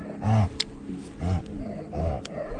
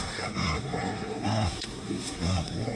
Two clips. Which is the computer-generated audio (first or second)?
second